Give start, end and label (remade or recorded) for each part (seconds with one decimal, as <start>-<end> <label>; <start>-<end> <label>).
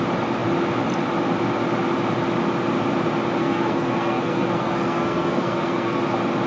0.0-3.4 recorded; 3.4-6.0 remade; 6.0-6.5 recorded